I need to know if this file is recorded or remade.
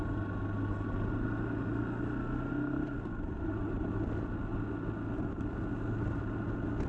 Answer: recorded